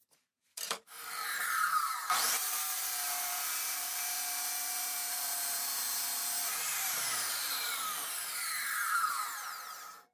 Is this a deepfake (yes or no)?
yes